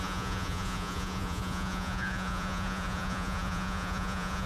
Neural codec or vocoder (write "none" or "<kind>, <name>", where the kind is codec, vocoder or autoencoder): vocoder, Vocos